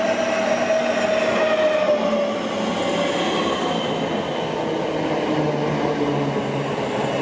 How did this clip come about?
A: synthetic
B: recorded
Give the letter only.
B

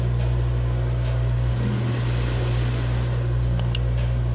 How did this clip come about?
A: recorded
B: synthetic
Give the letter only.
A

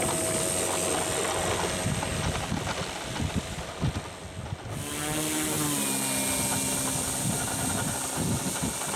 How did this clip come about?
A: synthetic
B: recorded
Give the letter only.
B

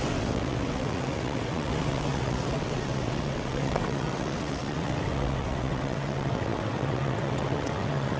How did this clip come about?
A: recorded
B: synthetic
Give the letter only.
B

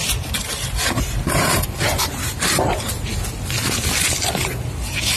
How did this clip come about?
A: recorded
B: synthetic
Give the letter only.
A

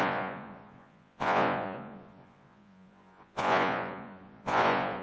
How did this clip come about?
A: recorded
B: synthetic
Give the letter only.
B